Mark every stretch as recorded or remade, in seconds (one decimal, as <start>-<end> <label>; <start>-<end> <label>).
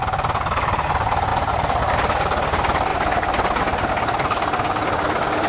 0.0-5.5 recorded